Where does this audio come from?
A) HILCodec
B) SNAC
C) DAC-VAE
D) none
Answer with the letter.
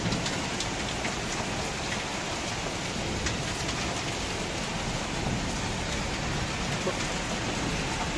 D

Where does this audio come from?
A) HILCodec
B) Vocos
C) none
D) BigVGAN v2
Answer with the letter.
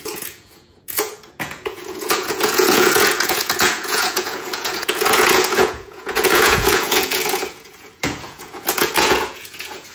B